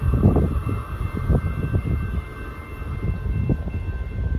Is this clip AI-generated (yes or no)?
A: no